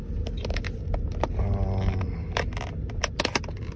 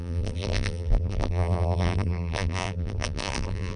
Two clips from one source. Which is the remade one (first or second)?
second